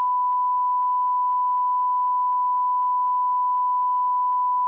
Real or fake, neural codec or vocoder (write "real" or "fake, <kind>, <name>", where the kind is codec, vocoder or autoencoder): real